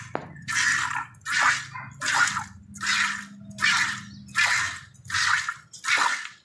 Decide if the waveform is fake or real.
real